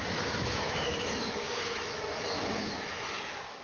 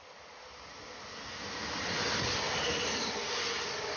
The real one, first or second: second